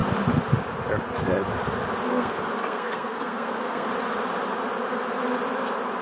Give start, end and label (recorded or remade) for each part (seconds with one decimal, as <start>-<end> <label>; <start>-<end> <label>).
0.0-2.1 recorded; 2.1-3.9 remade; 3.9-6.0 recorded

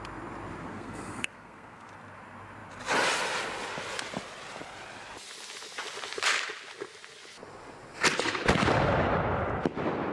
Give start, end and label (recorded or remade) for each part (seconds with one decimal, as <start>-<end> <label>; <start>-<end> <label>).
0.0-0.6 recorded; 0.6-1.9 remade; 1.9-10.1 recorded

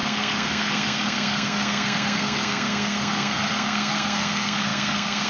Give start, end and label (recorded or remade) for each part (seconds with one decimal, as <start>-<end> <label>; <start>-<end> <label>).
0.0-5.3 remade

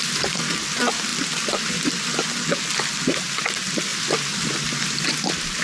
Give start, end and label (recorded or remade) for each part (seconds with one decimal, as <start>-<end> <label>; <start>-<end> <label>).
0.0-5.6 recorded

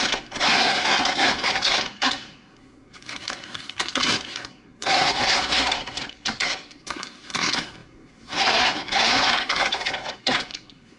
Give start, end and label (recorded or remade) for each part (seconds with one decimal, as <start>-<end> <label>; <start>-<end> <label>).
0.0-11.0 remade

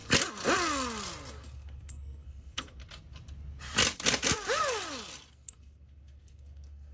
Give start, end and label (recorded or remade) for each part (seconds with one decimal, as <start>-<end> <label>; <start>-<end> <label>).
0.0-1.3 recorded; 1.3-2.8 remade; 2.8-5.3 recorded; 5.3-6.9 remade